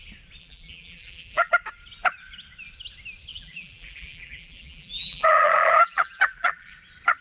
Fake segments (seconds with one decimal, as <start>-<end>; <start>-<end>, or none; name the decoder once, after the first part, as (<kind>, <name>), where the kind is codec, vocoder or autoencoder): 0.4-1.5 (vocoder, BigVGAN v2); 3.3-6.7

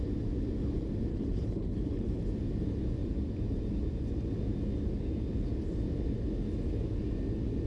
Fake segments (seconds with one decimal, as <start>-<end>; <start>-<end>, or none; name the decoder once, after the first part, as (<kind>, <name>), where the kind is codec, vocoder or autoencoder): 1.1-2.2 (codec, HILCodec)

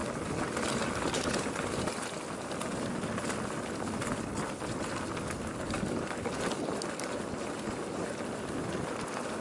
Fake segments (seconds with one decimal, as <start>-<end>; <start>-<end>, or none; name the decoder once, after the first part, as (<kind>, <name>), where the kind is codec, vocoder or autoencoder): none

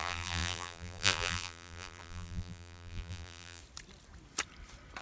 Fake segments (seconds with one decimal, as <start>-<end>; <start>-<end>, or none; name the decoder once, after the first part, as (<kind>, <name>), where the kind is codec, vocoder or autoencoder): 0.0-3.6 (vocoder, BigVGAN v2)

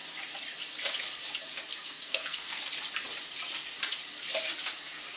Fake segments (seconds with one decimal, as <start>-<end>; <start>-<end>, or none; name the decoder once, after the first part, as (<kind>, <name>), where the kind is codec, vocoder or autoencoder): 1.7-2.6 (codec, SNAC)

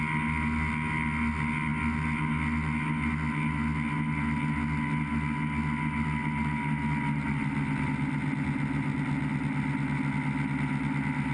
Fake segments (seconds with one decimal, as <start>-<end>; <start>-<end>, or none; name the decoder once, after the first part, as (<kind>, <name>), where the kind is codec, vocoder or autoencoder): none